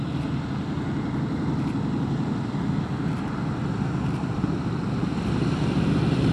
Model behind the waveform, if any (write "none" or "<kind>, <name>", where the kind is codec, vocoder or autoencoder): none